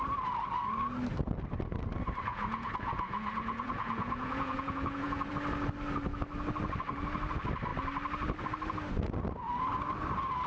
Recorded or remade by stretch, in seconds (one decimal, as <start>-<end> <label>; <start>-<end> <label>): 0.0-2.3 recorded; 2.3-5.3 remade; 5.3-10.5 recorded